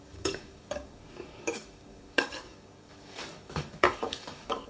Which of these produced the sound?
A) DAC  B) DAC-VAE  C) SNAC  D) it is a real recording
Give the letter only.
A